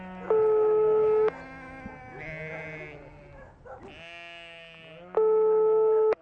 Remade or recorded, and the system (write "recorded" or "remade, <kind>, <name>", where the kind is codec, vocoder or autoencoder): recorded